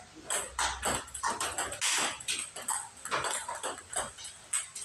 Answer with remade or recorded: recorded